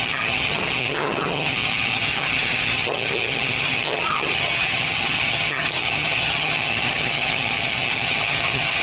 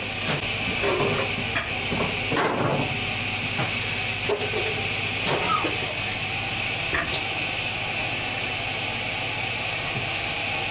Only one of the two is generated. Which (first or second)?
first